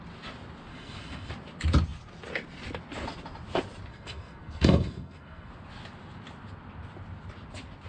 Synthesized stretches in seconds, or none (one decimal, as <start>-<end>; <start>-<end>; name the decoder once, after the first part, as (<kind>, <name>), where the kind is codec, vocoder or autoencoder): 0.7-1.3 (codec, SNAC); 3.9-5.5